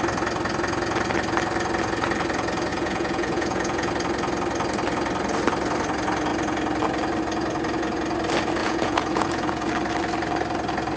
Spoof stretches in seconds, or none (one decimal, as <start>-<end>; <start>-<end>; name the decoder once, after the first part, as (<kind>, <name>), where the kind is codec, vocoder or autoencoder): 2.7-3.9 (vocoder, Vocos); 8.6-9.7